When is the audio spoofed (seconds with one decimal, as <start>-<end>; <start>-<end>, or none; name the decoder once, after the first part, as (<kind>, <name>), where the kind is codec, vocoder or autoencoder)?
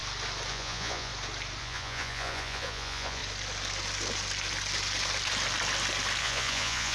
0.5-1.1 (vocoder, Vocos); 1.6-3.2; 6.2-6.9